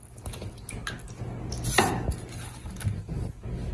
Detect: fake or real real